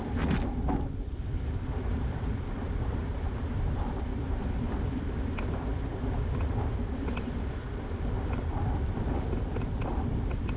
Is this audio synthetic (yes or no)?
yes